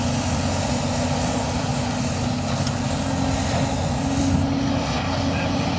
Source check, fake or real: real